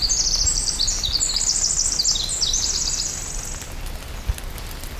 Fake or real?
real